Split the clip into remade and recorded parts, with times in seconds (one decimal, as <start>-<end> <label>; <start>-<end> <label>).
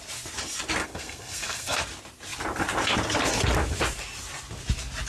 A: 0.0-0.8 recorded; 0.8-1.8 remade; 1.8-5.1 recorded